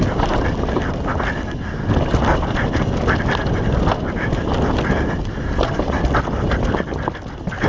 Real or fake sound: real